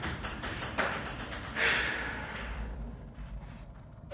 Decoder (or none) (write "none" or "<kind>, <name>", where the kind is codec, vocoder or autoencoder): vocoder, BigVGAN v2